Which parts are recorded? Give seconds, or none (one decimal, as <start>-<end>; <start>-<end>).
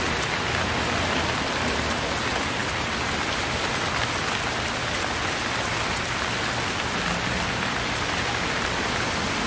0.0-9.5